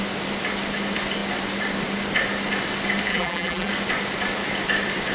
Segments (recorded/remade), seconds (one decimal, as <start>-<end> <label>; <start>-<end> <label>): 0.0-3.1 recorded; 3.1-3.7 remade; 3.7-5.1 recorded